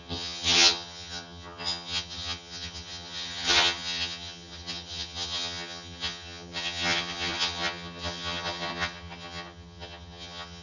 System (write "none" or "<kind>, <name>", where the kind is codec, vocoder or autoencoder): vocoder, HiFi-GAN